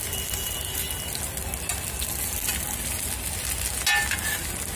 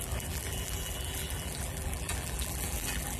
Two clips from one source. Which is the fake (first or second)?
second